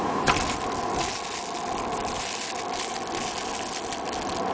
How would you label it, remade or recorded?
recorded